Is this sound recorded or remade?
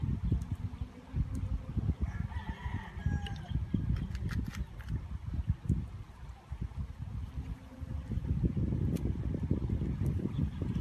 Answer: recorded